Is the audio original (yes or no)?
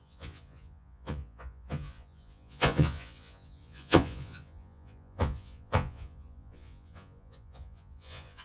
no